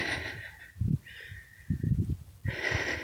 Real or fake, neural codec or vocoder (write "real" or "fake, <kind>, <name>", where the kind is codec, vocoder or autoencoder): fake, vocoder, BigVGAN v2